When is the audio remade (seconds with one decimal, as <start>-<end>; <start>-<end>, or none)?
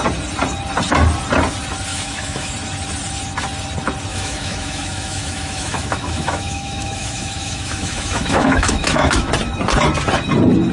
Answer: 1.9-2.5; 4.1-9.3